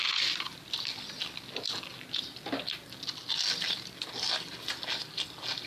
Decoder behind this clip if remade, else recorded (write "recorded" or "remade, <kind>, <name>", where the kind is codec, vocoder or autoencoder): recorded